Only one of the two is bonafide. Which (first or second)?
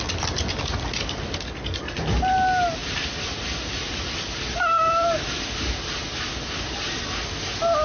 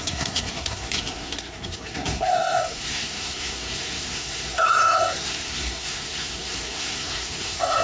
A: first